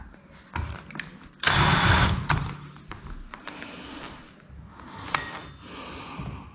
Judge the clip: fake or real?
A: real